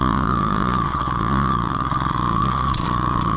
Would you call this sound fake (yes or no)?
yes